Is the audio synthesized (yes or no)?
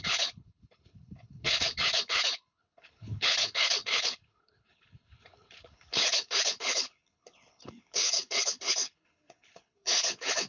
yes